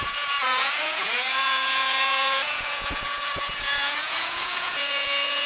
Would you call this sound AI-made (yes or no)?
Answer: yes